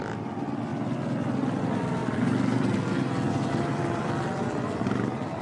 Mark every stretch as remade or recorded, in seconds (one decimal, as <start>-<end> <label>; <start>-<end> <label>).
0.0-0.7 recorded; 0.7-1.6 remade; 1.6-2.0 recorded; 2.0-5.4 remade